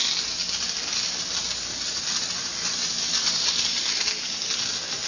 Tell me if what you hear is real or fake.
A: real